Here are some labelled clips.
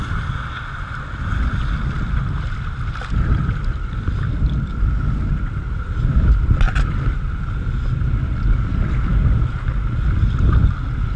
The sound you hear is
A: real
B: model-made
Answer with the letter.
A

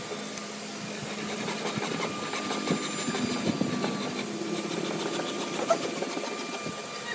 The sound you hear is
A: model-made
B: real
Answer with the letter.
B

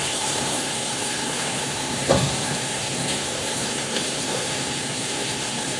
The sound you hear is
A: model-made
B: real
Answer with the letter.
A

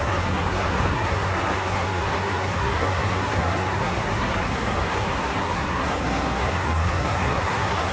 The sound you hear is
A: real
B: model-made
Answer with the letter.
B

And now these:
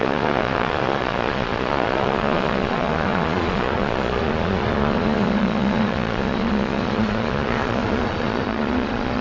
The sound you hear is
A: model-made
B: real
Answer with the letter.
A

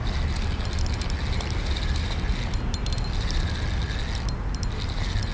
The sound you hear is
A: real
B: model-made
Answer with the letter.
A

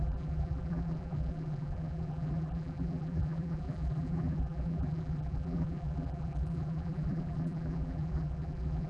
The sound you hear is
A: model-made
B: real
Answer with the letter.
A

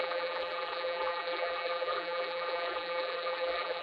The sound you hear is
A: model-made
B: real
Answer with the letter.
A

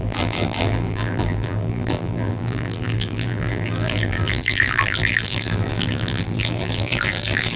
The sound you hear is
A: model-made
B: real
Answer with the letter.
A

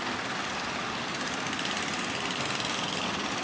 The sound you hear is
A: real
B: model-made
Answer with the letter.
A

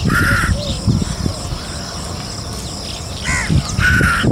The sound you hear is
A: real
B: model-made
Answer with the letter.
A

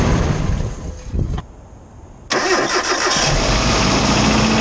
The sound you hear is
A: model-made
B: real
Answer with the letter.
B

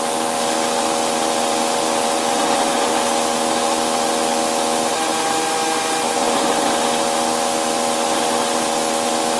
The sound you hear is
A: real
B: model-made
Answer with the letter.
A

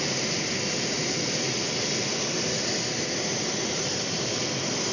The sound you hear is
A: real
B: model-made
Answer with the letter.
A